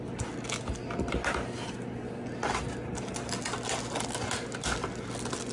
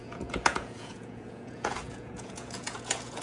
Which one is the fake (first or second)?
second